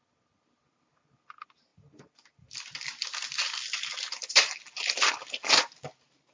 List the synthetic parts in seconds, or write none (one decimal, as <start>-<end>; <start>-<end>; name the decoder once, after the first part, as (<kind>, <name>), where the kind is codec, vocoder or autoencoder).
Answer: none